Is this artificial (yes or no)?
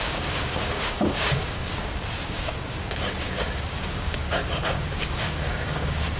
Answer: yes